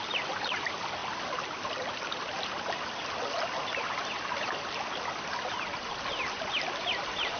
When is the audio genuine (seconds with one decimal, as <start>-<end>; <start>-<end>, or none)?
0.0-7.4

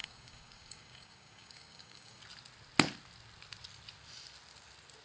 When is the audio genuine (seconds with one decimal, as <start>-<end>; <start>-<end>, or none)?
2.2-5.0

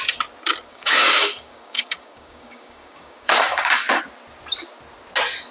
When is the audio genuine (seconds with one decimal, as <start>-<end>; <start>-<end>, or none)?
0.0-0.7; 4.0-5.5

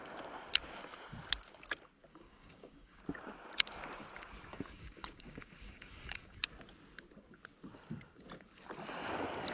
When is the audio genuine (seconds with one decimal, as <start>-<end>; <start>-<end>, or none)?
0.0-2.1; 3.0-4.5; 6.4-9.5